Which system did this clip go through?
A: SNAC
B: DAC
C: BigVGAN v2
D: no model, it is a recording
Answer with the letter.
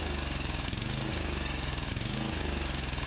B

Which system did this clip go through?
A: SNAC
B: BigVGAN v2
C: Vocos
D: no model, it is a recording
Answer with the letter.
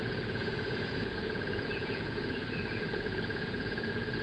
C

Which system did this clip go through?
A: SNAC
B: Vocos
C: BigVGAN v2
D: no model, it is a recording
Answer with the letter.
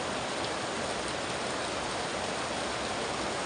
D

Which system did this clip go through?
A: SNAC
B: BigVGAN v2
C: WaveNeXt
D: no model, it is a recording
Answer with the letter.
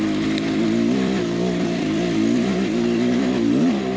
B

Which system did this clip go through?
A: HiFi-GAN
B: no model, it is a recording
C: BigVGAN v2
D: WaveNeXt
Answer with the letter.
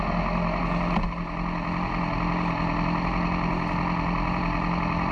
B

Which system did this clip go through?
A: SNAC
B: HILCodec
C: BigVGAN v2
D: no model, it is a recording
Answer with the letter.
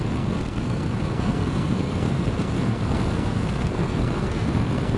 A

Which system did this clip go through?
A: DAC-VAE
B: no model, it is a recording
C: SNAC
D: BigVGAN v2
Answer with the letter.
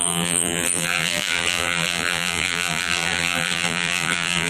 D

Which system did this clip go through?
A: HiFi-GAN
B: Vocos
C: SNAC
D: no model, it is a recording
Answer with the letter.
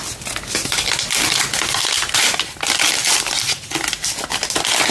D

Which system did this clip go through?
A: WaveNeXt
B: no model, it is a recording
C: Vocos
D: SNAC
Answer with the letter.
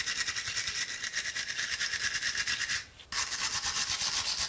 B